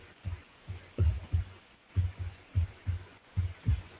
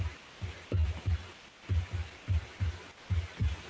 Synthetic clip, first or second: first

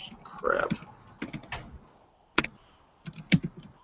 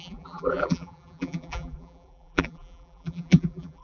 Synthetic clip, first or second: second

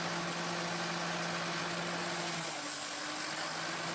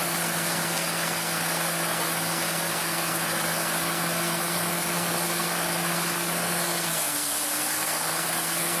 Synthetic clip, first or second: second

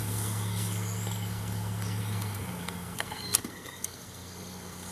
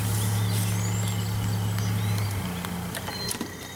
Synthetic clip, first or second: first